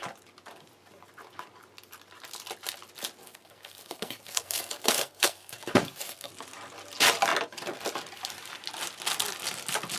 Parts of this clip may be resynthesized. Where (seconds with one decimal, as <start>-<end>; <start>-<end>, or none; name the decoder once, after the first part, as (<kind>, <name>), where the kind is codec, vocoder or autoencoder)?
3.2-6.3 (codec, SNAC)